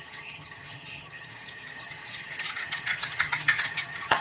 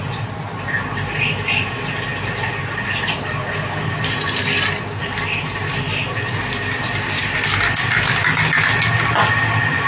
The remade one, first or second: first